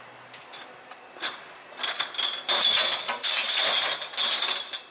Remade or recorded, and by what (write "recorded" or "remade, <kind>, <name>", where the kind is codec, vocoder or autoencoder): recorded